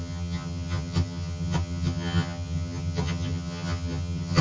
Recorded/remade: remade